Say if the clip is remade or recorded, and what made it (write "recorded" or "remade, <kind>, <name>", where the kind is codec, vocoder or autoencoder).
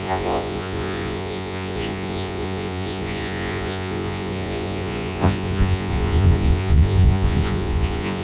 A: remade, vocoder, Vocos